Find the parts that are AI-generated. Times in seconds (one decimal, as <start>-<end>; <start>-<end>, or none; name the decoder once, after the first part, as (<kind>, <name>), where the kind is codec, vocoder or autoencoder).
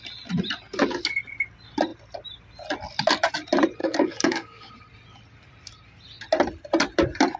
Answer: 3.8-4.7 (codec, DAC)